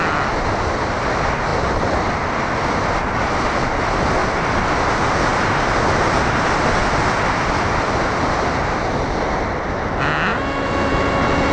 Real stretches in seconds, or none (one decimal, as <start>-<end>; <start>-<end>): 0.0-1.5; 2.3-11.5